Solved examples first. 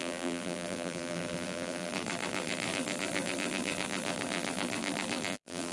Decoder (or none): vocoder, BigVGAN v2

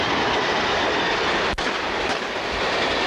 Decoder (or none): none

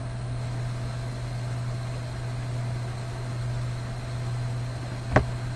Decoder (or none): none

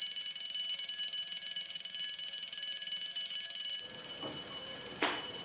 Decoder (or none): vocoder, BigVGAN v2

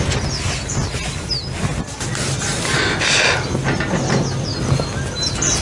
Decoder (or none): none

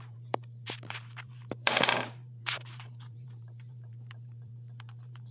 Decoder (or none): vocoder, BigVGAN v2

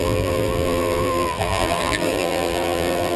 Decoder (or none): vocoder, BigVGAN v2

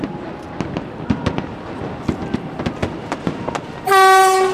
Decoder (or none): none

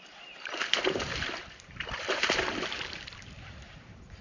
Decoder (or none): vocoder, BigVGAN v2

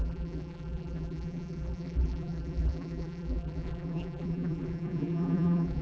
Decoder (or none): vocoder, BigVGAN v2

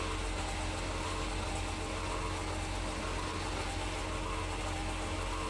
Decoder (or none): none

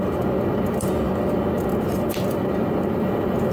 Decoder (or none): none